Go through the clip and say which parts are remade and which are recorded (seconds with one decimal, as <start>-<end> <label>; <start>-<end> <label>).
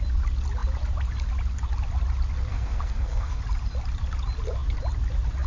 0.0-2.5 recorded; 2.5-3.4 remade; 3.4-5.5 recorded